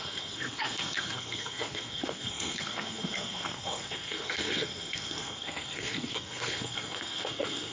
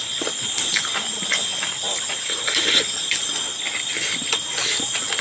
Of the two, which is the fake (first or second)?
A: first